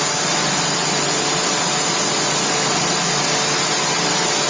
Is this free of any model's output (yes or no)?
yes